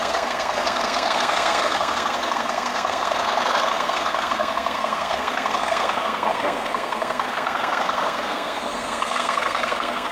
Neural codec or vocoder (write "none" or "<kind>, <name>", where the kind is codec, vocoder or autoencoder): codec, SNAC